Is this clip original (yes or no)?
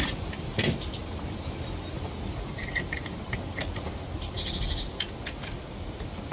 yes